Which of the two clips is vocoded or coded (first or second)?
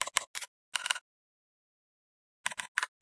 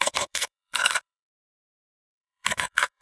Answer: second